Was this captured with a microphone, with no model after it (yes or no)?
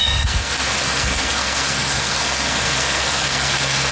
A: no